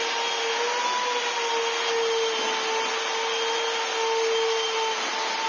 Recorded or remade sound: recorded